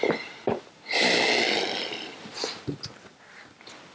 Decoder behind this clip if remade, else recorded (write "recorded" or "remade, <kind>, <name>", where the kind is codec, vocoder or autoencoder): recorded